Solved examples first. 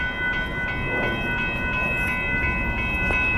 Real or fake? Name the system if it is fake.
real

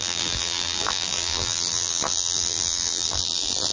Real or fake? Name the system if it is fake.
fake, vocoder, BigVGAN v2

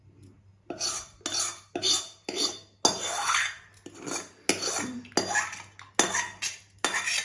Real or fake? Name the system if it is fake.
real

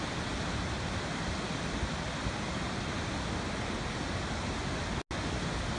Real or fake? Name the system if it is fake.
real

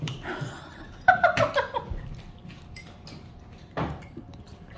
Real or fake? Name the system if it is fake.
real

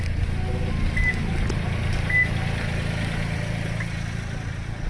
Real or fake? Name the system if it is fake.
real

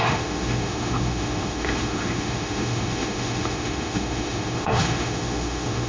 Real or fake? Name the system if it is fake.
fake, autoencoder, DAC-VAE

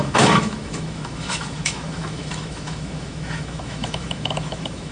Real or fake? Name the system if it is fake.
fake, autoencoder, DAC-VAE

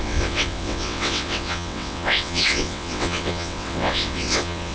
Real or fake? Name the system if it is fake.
fake, vocoder, WaveNeXt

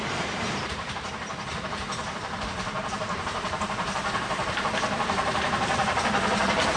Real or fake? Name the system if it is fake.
fake, vocoder, BigVGAN v2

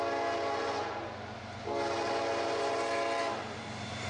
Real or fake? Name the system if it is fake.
real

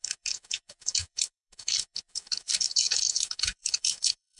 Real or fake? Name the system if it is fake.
fake, codec, DAC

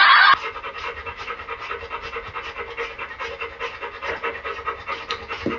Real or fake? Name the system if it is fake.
real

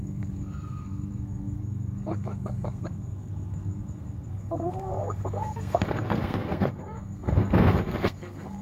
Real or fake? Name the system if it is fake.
fake, codec, SNAC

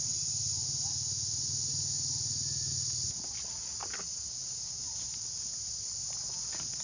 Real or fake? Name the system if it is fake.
real